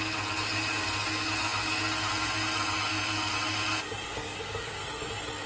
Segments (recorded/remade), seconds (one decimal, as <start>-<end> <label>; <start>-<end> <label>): 0.0-4.1 recorded; 4.1-4.8 remade; 4.8-5.5 recorded